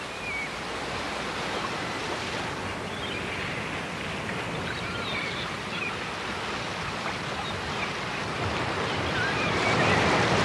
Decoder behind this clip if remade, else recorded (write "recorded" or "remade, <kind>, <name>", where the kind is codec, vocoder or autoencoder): recorded